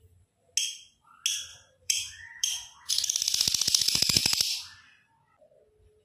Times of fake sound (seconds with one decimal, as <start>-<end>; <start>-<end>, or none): 1.5-2.9